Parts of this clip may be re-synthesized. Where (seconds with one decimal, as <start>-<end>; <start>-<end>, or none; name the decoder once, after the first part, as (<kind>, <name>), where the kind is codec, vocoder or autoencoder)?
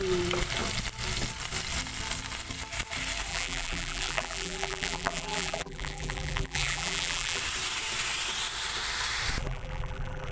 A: 3.3-7.4 (vocoder, BigVGAN v2); 9.4-10.3